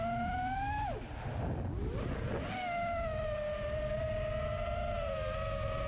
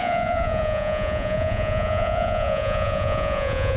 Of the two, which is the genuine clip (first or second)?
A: first